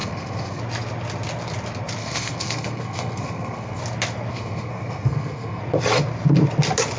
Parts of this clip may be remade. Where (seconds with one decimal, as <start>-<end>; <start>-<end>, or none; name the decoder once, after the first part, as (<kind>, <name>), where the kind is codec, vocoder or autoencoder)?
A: 0.0-0.6 (codec, SNAC); 2.0-3.8; 4.3-5.6